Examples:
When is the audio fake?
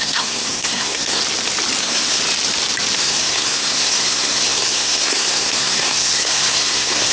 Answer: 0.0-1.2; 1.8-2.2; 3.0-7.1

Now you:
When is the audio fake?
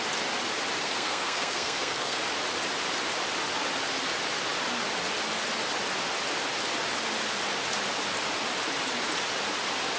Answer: 0.8-2.2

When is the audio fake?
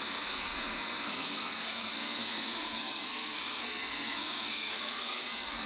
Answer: 0.0-5.7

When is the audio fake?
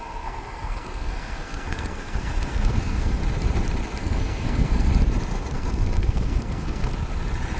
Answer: 0.0-3.2; 4.0-4.9; 5.5-6.9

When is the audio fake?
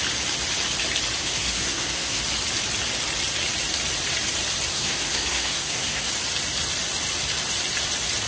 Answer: 1.2-2.2; 4.7-6.1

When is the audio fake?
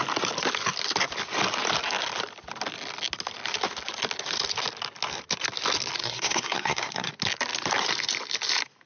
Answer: 6.0-7.1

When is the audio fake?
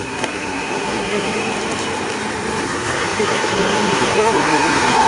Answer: 0.0-1.4; 2.6-5.1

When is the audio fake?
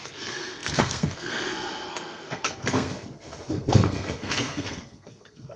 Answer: 0.0-5.6